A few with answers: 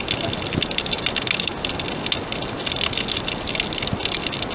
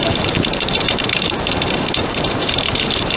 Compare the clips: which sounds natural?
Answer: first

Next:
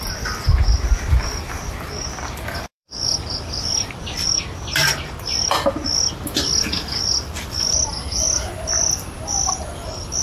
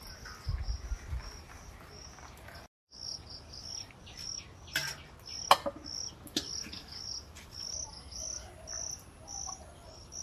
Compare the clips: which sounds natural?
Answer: second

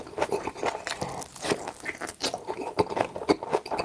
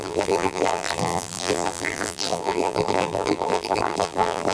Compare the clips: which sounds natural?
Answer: first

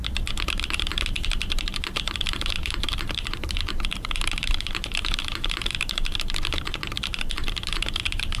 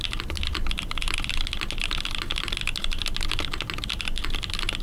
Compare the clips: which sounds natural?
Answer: second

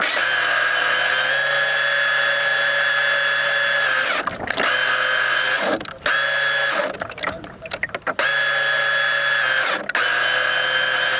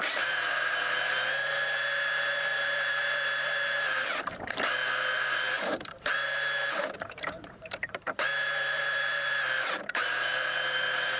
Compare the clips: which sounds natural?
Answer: first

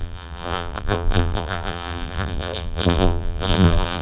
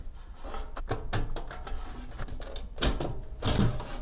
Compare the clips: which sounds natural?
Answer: second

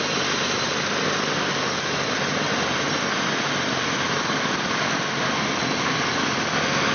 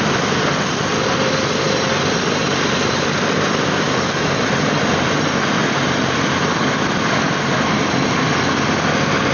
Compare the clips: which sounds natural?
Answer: first